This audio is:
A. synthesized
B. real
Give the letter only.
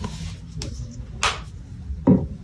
B